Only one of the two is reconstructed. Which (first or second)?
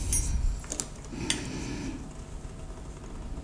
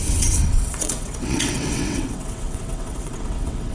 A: second